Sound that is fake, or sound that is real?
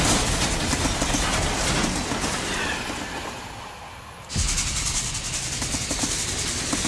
real